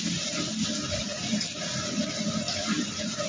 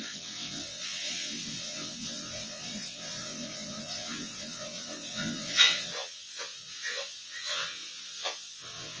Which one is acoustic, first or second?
first